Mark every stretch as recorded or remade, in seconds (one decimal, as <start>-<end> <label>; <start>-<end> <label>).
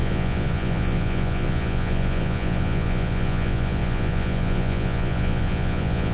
0.0-6.1 remade